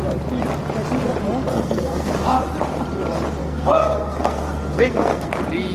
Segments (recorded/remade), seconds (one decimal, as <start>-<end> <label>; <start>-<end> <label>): 0.0-1.5 recorded; 1.5-2.1 remade; 2.1-3.4 recorded; 3.4-5.3 remade; 5.3-5.7 recorded